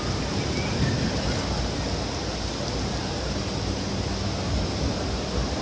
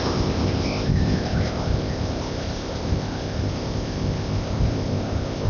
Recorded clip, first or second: first